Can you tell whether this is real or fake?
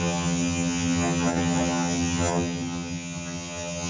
fake